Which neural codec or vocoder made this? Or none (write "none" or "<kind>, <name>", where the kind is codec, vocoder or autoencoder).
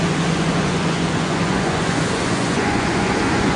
vocoder, Vocos